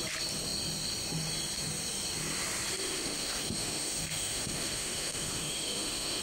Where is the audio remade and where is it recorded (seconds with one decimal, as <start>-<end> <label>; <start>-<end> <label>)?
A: 0.0-2.8 recorded; 2.8-6.2 remade